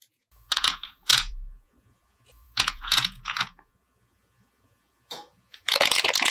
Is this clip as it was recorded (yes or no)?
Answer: no